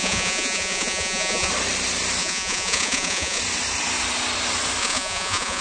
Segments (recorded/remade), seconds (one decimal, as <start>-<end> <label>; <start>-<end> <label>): 0.0-1.5 remade; 1.5-2.2 recorded; 2.2-3.4 remade; 3.4-4.8 recorded; 4.8-5.6 remade